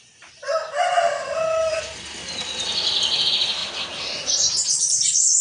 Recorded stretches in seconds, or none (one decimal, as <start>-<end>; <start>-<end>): 0.0-5.4